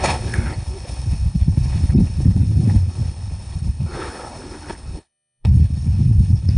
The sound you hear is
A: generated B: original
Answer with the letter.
A